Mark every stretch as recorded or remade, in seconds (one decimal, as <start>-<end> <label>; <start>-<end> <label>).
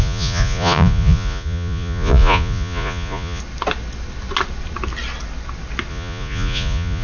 0.0-3.4 remade; 3.4-5.9 recorded; 5.9-7.0 remade